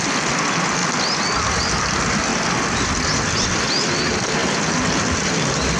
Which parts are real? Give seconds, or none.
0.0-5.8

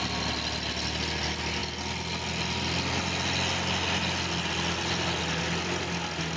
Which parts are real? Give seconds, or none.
0.0-6.4